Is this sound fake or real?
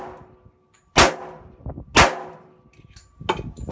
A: real